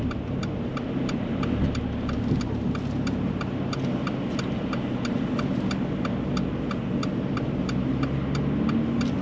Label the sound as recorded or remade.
recorded